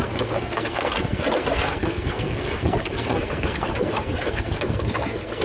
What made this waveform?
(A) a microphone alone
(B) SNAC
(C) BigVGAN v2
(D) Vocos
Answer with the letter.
B